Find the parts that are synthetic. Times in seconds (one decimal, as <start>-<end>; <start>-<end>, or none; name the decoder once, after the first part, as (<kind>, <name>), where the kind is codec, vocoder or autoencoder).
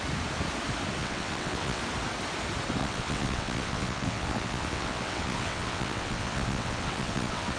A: 1.0-1.8 (vocoder, WaveNeXt); 2.8-7.6